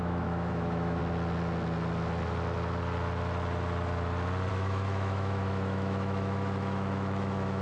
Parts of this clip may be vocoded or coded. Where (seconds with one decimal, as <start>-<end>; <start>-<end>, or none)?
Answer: 0.0-1.0; 4.5-7.6

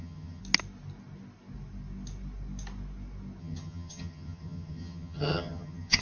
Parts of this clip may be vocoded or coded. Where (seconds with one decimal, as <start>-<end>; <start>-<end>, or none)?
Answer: 0.0-0.4; 3.4-6.0

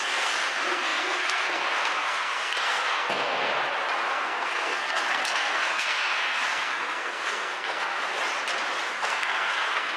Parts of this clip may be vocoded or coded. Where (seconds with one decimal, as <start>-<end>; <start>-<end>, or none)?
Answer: 0.0-3.5; 4.1-8.0; 8.9-10.0

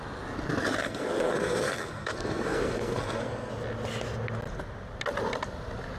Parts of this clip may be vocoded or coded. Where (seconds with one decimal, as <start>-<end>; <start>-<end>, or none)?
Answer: 0.8-3.5

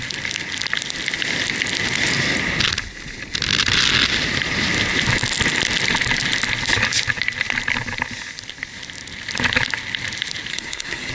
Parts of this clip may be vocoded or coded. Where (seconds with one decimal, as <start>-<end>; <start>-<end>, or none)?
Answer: 10.5-11.1

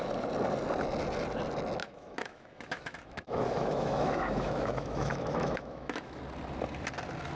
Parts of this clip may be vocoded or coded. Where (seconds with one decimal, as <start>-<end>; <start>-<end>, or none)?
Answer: 1.8-6.2

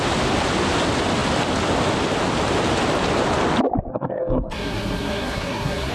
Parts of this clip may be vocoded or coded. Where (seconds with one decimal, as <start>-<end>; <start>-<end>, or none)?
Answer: 3.9-5.9

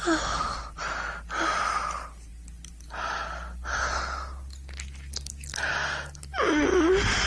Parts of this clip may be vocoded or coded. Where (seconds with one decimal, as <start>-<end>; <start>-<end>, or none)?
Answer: none